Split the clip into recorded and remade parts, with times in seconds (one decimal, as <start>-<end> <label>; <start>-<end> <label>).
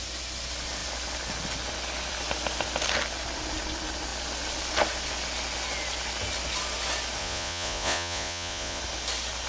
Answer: 0.0-7.2 recorded; 7.2-8.8 remade; 8.8-9.5 recorded